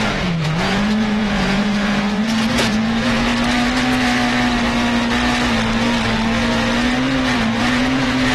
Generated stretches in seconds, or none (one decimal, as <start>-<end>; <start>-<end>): 0.0-3.3; 7.6-8.3